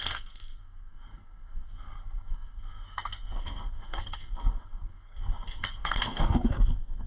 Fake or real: fake